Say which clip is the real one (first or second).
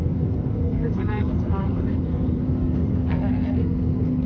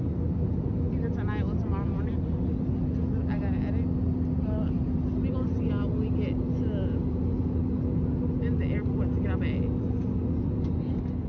second